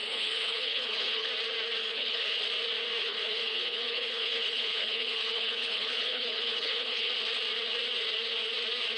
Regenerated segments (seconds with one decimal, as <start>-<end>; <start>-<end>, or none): 0.0-1.3; 1.8-2.4; 3.0-7.1